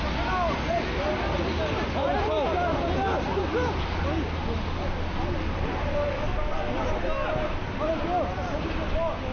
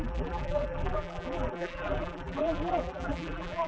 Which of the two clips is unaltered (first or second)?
first